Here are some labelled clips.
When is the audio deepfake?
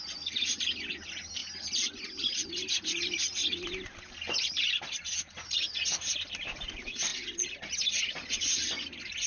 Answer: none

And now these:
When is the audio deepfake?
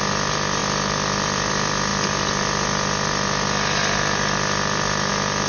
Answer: none